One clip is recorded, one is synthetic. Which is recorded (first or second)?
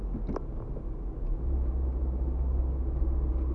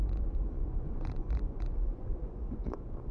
first